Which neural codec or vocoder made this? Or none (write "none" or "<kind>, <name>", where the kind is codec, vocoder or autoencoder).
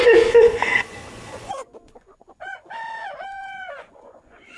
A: vocoder, Vocos